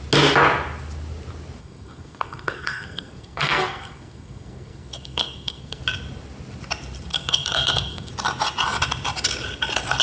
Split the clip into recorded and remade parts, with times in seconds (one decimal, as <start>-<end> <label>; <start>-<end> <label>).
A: 0.0-1.6 recorded; 1.6-5.8 remade; 5.8-7.1 recorded; 7.1-8.1 remade; 8.1-10.0 recorded

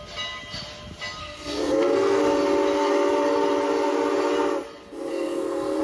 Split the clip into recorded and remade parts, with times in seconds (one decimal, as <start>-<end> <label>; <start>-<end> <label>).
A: 0.0-1.2 recorded; 1.2-2.2 remade; 2.2-5.1 recorded; 5.1-5.8 remade

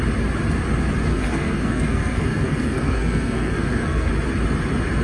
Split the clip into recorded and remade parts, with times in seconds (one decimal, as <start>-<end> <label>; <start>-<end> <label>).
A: 0.0-1.1 recorded; 1.1-4.1 remade; 4.1-5.0 recorded